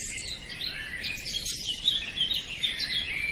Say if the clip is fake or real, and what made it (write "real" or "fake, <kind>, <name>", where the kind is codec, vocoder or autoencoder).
real